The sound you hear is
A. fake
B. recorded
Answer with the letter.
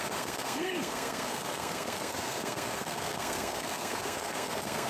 A